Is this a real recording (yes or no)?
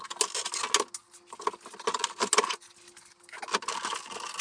yes